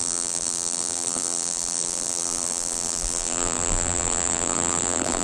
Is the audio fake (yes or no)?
yes